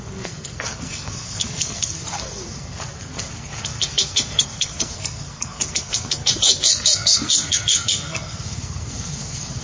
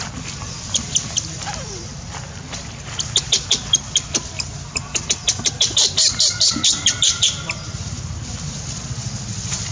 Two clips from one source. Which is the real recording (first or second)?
second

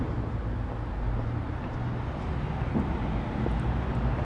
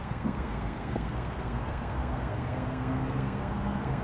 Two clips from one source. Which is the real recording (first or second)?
first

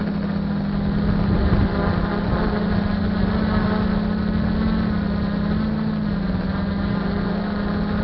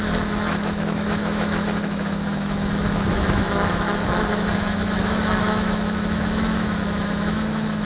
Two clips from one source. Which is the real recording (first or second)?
first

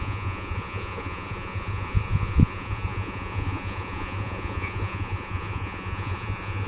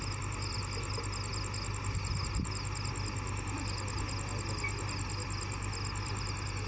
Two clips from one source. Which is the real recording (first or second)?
second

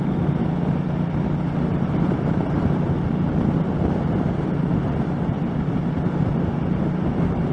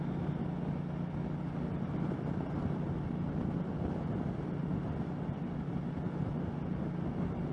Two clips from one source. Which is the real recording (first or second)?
second